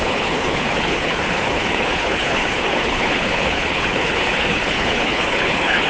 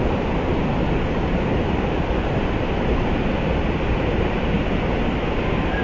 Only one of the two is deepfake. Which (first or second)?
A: first